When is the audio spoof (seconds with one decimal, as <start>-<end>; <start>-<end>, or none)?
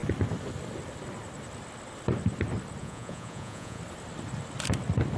2.8-3.8